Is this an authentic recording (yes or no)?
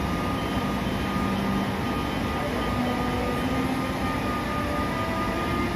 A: yes